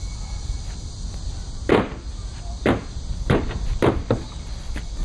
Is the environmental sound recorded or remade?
recorded